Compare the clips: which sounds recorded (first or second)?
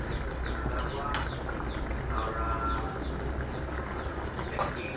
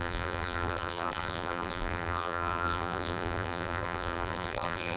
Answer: first